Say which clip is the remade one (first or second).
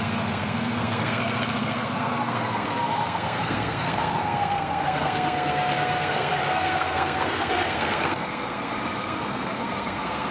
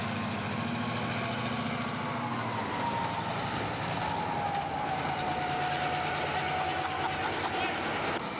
first